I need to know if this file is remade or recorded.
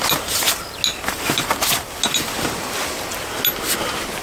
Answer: recorded